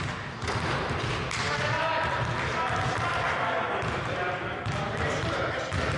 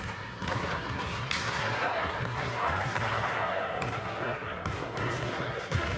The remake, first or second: second